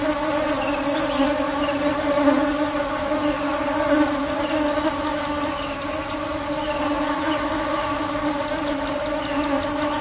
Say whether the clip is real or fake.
real